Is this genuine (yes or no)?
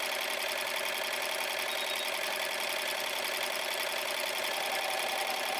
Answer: yes